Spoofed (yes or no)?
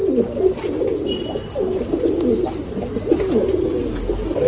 no